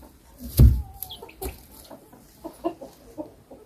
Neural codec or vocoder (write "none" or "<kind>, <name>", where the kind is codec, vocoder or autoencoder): none